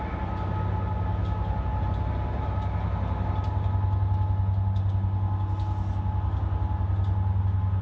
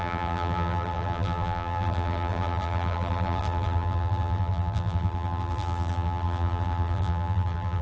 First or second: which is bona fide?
first